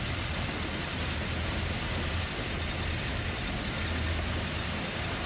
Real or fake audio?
real